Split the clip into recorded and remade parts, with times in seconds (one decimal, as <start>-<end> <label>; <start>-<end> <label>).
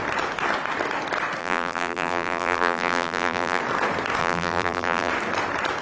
0.0-1.4 recorded; 1.4-3.6 remade; 3.6-4.2 recorded; 4.2-5.1 remade; 5.1-5.8 recorded